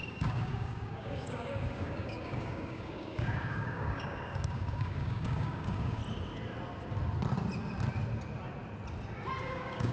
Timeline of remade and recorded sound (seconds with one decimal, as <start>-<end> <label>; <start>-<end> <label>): 0.0-6.0 remade; 6.0-9.4 recorded; 9.4-9.9 remade